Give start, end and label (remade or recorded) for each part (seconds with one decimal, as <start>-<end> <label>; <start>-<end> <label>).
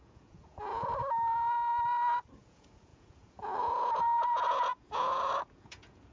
0.0-1.0 remade; 1.0-2.3 recorded; 2.3-6.1 remade